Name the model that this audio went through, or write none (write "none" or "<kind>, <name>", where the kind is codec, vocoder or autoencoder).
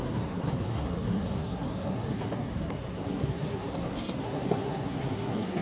codec, SNAC